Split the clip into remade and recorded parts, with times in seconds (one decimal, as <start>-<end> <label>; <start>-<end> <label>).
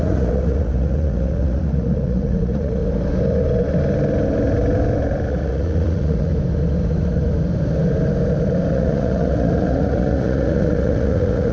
0.0-2.8 remade; 2.8-5.3 recorded; 5.3-6.3 remade; 6.3-8.7 recorded; 8.7-11.5 remade